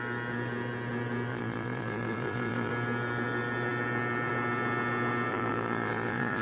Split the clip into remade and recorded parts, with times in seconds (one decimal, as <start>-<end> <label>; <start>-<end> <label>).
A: 0.0-1.3 recorded; 1.3-2.7 remade; 2.7-5.3 recorded; 5.3-6.4 remade